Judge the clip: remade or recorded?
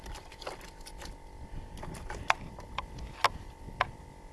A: recorded